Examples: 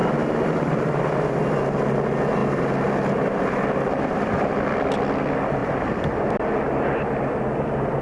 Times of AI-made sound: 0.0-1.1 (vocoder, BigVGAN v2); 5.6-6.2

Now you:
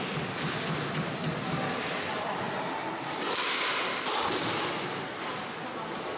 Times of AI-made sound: none

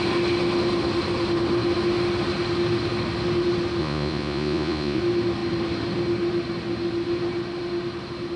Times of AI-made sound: 3.8-5.0 (vocoder, Vocos)

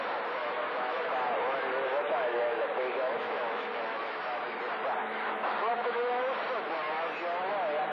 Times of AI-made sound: 0.4-1.1 (autoencoder, DAC-VAE); 1.9-4.2; 5.0-6.2

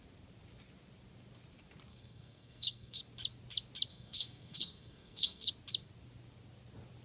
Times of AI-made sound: 1.9-3.0 (codec, SNAC); 3.9-5.5

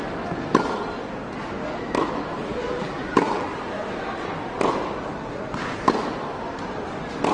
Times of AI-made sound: 2.5-3.5 (vocoder, BigVGAN v2)

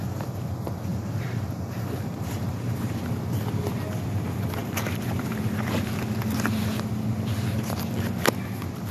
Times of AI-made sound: 0.9-3.0 (vocoder, BigVGAN v2)

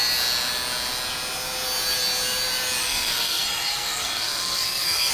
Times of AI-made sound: 2.8-5.1 (codec, SNAC)